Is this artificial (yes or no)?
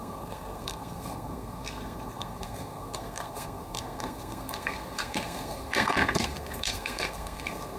yes